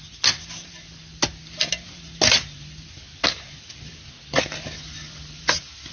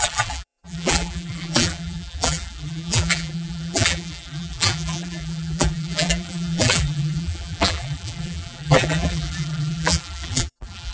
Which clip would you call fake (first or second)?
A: second